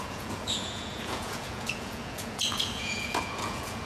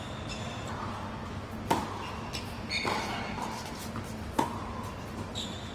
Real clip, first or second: second